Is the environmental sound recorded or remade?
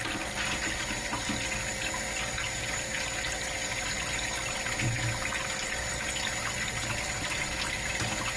recorded